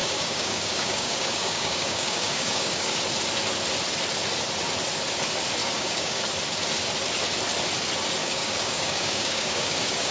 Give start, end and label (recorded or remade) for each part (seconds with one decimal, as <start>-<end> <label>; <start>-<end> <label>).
0.0-3.0 remade; 3.0-5.6 recorded; 5.6-6.2 remade; 6.2-8.2 recorded; 8.2-10.1 remade